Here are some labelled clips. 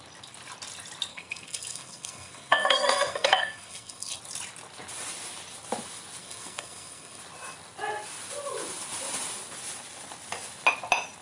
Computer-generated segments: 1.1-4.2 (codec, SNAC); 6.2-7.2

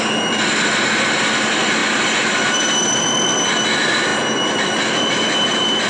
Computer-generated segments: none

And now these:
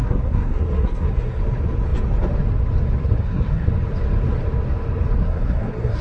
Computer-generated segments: 0.0-1.4 (codec, SNAC); 3.0-3.7; 5.2-6.0